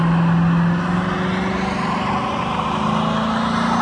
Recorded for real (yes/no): yes